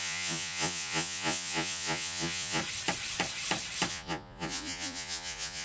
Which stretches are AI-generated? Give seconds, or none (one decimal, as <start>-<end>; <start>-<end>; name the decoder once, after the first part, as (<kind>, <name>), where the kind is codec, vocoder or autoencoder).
0.0-2.6 (vocoder, Vocos); 3.9-5.6